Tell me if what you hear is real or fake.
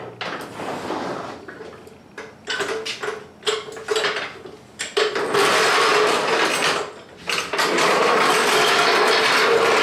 real